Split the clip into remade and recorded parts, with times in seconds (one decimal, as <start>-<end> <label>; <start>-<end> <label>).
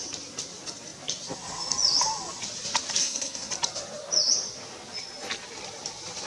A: 0.0-3.0 recorded; 3.0-3.5 remade; 3.5-6.3 recorded